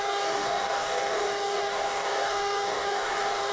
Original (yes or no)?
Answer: no